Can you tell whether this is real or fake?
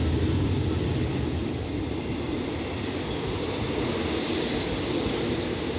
real